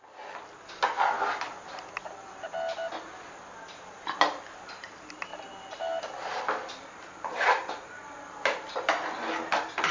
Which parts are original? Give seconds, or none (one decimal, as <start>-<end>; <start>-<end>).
0.0-9.9